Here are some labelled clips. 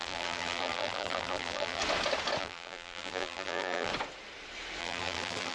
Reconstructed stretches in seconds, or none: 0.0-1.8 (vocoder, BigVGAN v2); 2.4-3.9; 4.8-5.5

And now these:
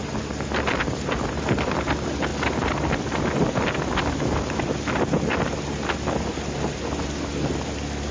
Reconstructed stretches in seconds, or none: none